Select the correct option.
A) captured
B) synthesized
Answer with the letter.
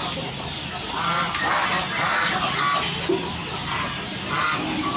A